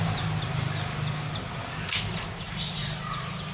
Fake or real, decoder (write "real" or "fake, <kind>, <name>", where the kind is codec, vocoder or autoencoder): real